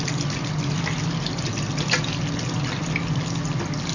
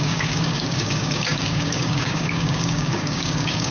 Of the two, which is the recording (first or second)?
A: first